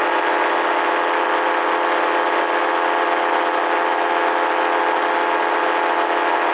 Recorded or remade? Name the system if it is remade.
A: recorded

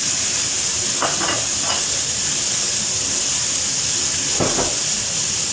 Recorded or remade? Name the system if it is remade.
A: recorded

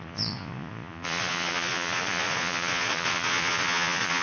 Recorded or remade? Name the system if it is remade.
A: remade, vocoder, Vocos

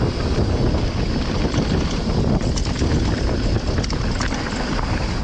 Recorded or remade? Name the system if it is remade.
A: recorded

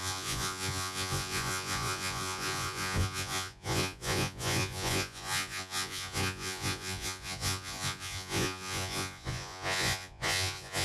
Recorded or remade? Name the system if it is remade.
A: remade, vocoder, Vocos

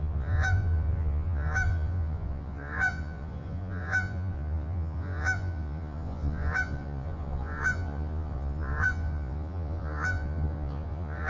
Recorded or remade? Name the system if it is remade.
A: remade, vocoder, Vocos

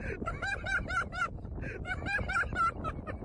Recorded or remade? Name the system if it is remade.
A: recorded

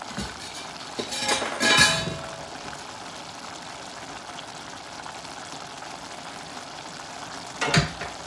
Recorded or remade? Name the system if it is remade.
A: recorded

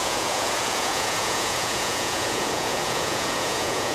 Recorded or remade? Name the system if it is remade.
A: remade, vocoder, Vocos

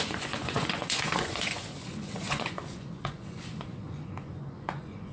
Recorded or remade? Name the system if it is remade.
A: remade, vocoder, Vocos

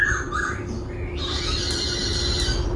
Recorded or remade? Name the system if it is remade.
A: recorded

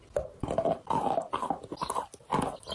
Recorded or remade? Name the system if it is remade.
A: recorded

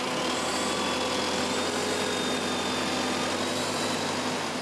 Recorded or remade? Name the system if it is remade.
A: recorded